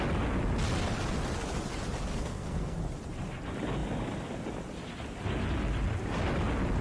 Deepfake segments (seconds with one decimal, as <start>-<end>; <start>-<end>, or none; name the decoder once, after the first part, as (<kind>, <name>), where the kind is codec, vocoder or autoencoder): 2.1-2.8 (codec, SNAC)